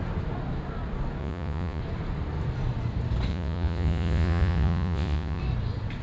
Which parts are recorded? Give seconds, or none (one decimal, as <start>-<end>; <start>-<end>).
0.0-1.2; 1.8-3.3; 5.4-6.0